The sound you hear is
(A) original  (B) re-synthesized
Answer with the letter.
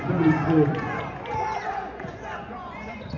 B